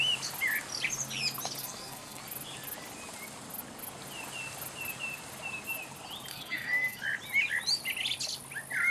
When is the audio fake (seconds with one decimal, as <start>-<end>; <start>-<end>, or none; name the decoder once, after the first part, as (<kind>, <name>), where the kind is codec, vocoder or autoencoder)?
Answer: 1.6-2.2 (codec, SNAC); 6.3-7.0